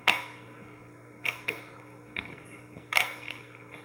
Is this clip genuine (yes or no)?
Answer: no